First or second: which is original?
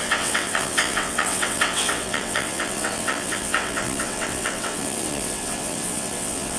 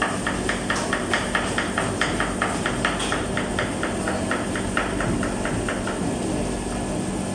second